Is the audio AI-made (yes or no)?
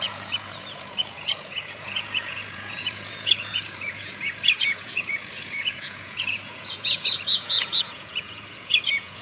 yes